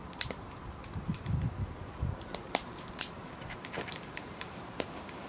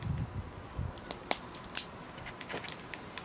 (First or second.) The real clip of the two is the second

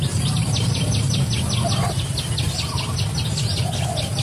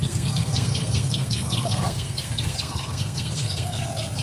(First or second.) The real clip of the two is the first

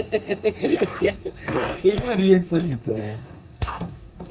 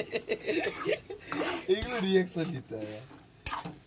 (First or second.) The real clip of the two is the second